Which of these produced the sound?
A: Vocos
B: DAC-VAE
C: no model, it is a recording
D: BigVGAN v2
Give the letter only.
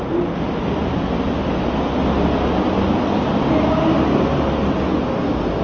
C